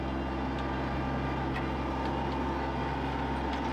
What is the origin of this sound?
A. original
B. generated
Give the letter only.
A